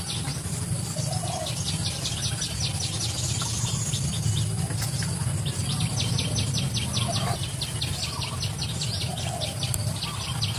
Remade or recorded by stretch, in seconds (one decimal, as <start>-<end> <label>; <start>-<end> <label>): 0.0-10.6 recorded

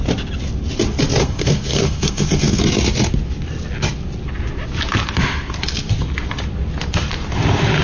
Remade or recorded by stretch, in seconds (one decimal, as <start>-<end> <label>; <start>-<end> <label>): 0.0-1.2 recorded; 1.2-2.6 remade; 2.6-7.8 recorded

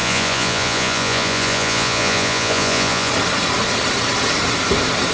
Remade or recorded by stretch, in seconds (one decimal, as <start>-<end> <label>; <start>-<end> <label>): 0.0-3.1 remade; 3.1-5.1 recorded

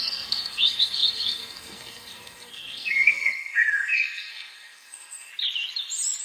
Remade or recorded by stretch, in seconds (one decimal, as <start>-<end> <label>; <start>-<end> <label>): 0.0-5.3 remade; 5.3-6.2 recorded

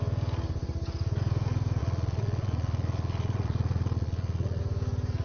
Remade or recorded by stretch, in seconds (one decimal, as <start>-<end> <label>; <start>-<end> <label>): 0.0-1.8 recorded; 1.8-4.6 remade; 4.6-5.2 recorded

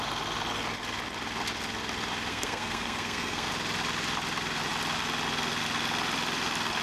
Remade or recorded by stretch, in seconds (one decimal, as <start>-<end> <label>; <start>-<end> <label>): 0.0-2.3 recorded; 2.3-3.5 remade; 3.5-6.8 recorded